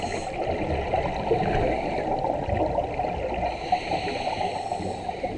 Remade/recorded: recorded